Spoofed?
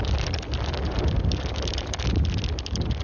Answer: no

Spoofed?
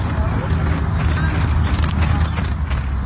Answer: no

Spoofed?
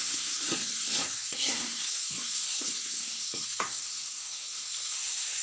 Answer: yes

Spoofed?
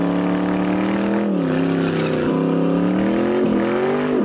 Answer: no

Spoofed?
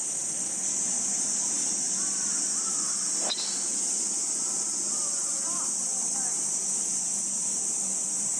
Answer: yes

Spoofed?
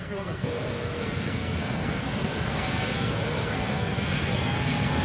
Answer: yes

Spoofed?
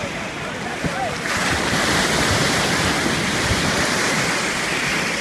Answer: no